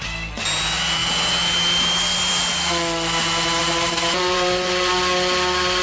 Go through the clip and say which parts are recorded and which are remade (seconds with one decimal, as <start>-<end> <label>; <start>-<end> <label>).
0.0-3.6 recorded; 3.6-4.9 remade; 4.9-5.8 recorded